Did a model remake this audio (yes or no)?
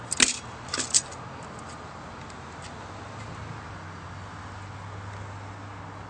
no